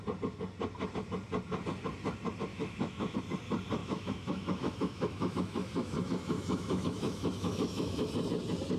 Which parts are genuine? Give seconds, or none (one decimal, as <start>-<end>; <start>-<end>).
0.0-2.5; 3.2-3.8; 8.1-8.8